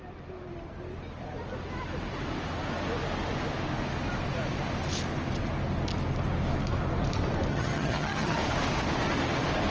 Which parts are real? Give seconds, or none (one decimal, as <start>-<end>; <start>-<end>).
0.0-7.5; 8.4-9.7